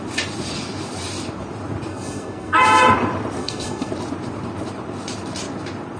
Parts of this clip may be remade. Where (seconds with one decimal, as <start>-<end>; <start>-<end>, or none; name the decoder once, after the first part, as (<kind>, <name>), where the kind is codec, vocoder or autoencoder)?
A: 1.9-2.6 (codec, SNAC); 3.4-3.9